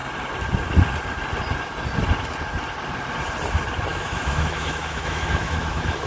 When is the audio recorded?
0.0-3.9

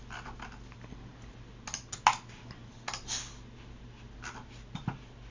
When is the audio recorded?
0.0-5.3